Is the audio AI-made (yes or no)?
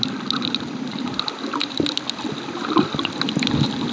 yes